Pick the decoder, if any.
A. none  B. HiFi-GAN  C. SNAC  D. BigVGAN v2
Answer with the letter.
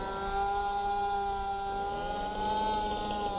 A